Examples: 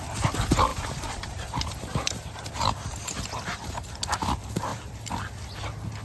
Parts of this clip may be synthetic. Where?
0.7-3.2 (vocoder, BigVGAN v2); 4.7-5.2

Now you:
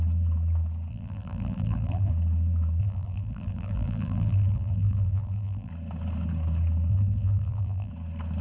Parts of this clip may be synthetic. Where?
0.9-2.1 (vocoder, BigVGAN v2); 2.8-5.7; 6.9-7.9